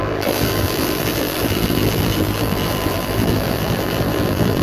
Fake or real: fake